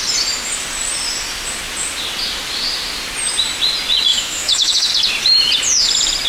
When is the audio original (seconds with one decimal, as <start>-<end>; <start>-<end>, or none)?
0.0-4.1; 4.9-6.3